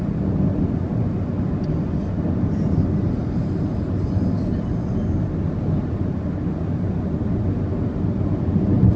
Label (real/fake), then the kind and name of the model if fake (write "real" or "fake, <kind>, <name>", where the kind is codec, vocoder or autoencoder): real